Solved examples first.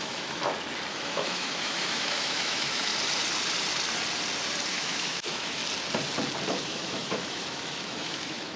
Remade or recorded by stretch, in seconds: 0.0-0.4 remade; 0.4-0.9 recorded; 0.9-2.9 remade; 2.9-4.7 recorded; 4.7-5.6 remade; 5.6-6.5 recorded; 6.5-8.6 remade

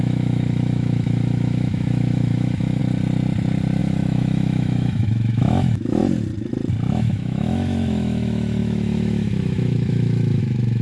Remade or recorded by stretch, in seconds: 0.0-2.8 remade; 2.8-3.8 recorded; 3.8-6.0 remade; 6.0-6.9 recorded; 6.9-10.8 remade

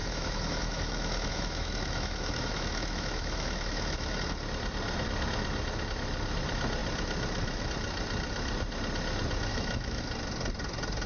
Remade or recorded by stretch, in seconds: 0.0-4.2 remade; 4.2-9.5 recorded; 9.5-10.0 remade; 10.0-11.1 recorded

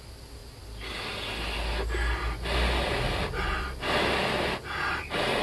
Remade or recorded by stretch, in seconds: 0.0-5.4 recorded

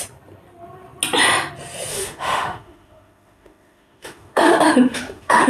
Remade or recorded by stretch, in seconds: 0.0-1.9 recorded; 1.9-5.5 remade

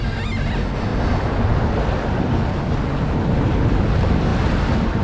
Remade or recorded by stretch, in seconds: 0.0-5.0 recorded

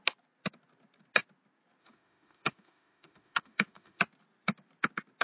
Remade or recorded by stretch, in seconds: 0.0-1.8 recorded; 1.8-4.0 remade; 4.0-5.2 recorded